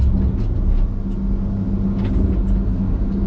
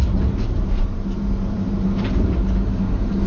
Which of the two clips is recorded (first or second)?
first